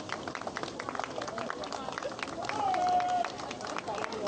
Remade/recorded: recorded